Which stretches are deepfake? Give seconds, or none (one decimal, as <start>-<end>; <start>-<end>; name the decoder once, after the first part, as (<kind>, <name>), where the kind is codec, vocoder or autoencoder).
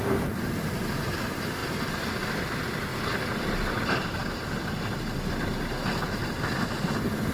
1.6-2.4 (vocoder, BigVGAN v2)